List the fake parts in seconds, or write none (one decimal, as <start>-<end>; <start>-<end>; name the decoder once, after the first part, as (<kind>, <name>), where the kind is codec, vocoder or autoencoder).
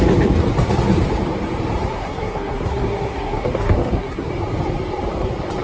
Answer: 1.9-4.3 (codec, SNAC)